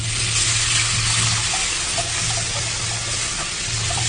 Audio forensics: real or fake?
real